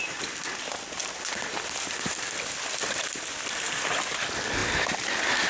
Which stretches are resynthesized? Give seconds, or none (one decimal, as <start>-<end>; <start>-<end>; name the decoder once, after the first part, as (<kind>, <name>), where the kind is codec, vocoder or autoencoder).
none